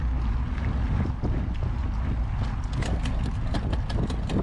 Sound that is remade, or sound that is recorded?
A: recorded